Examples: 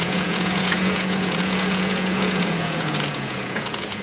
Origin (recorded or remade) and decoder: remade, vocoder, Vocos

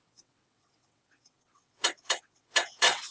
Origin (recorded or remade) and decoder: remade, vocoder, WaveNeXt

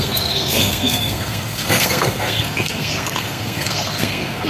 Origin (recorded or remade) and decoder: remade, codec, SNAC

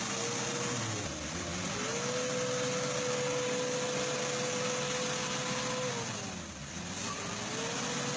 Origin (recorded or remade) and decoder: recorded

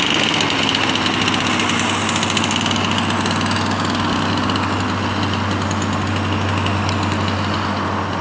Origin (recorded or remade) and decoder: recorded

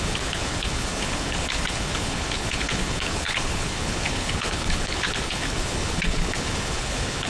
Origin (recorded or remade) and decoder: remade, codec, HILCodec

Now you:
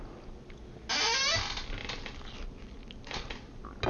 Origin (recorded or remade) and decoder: recorded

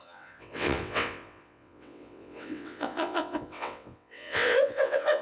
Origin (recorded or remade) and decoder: remade, vocoder, WaveNeXt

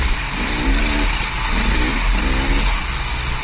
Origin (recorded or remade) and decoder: recorded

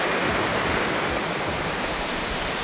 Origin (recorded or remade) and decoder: recorded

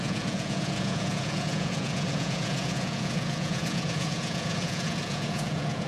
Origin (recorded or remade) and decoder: remade, vocoder, Vocos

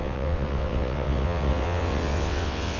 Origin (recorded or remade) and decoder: remade, vocoder, WaveNeXt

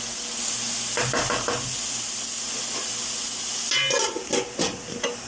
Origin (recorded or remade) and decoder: recorded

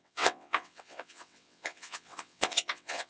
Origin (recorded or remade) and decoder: remade, vocoder, WaveNeXt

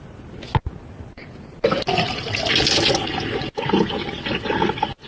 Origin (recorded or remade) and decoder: recorded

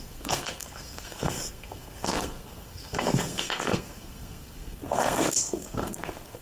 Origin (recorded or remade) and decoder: remade, codec, SNAC